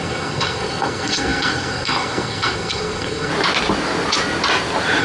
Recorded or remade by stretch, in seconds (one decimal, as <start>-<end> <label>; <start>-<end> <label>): 0.0-3.3 remade; 3.3-5.0 recorded